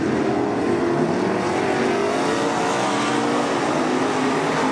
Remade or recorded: recorded